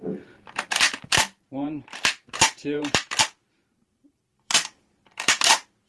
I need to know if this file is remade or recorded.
remade